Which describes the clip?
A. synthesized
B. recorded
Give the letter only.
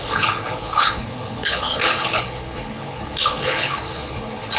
A